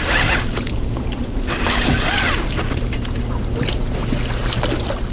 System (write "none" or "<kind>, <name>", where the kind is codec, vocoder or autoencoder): none